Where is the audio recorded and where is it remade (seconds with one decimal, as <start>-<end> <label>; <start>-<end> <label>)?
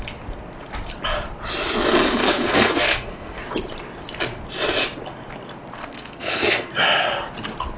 0.0-2.2 recorded; 2.2-3.4 remade; 3.4-5.8 recorded; 5.8-6.7 remade; 6.7-7.8 recorded